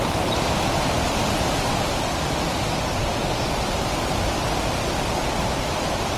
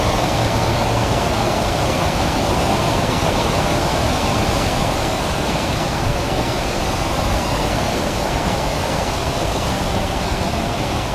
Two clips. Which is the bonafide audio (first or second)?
first